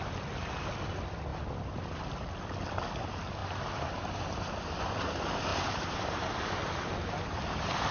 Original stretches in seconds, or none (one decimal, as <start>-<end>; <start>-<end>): 0.0-3.4; 4.8-5.5; 6.9-7.9